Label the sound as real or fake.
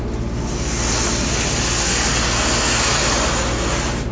real